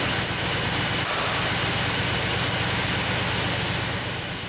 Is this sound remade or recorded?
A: recorded